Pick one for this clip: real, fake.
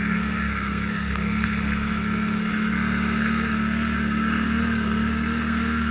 fake